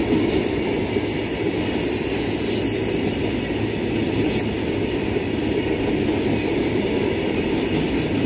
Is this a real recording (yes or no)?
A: yes